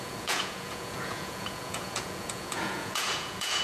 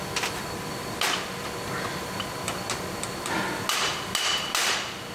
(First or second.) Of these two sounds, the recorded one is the second